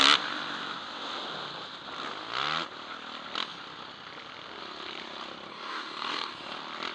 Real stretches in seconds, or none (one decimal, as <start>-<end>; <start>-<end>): 0.0-5.5; 6.3-6.9